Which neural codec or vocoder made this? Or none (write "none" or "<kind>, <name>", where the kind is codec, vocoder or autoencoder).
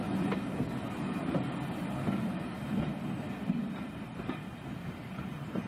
none